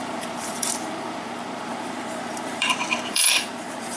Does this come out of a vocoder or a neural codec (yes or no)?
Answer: yes